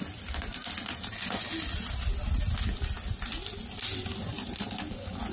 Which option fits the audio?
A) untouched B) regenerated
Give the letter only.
A